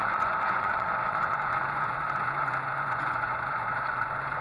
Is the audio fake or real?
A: fake